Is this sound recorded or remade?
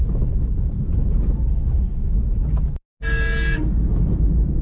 recorded